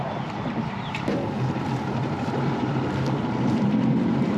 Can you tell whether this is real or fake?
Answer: fake